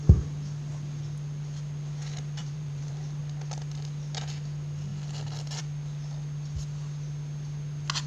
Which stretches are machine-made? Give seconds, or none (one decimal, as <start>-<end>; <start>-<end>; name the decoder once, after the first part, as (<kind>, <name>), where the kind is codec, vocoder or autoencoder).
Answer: 2.4-3.2 (vocoder, BigVGAN v2)